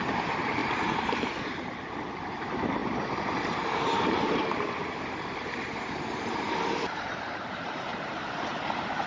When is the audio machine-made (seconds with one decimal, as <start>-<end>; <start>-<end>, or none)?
0.0-0.6; 1.4-9.1

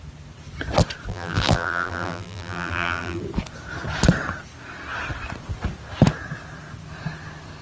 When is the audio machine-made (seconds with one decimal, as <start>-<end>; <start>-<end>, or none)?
1.1-3.2